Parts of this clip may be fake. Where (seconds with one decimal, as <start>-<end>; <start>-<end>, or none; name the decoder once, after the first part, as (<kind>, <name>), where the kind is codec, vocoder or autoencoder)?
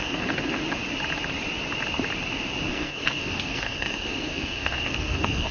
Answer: 0.0-0.6 (codec, SNAC); 2.7-5.5